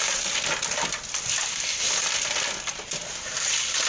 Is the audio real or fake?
real